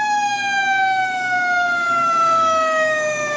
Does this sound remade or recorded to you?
remade